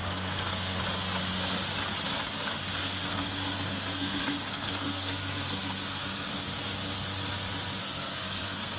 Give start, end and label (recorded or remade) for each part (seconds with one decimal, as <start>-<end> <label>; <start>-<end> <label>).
0.0-0.8 remade; 0.8-2.8 recorded; 2.8-6.3 remade; 6.3-7.8 recorded; 7.8-8.8 remade